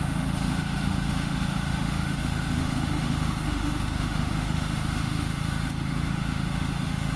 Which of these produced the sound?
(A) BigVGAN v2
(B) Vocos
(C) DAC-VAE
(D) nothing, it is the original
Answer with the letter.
C